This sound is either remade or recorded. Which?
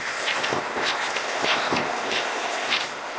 remade